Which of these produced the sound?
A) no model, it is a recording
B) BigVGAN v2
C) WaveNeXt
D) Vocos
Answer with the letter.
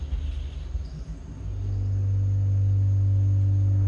A